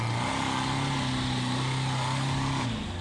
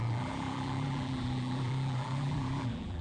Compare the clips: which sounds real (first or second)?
first